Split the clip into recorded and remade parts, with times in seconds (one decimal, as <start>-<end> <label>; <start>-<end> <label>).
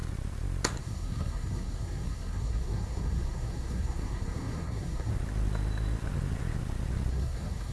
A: 0.0-0.8 recorded; 0.8-5.1 remade; 5.1-7.1 recorded; 7.1-7.7 remade